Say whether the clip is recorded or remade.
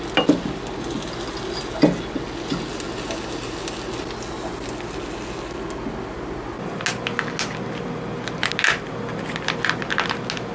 recorded